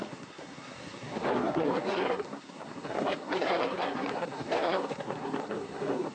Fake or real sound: fake